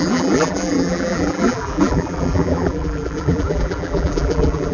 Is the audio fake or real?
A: fake